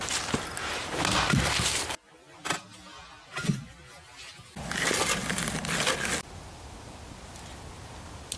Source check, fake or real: real